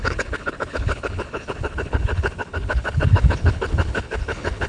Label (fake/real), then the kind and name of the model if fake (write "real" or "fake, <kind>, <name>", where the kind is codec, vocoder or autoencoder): fake, codec, HILCodec